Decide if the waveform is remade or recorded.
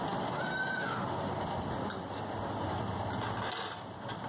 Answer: recorded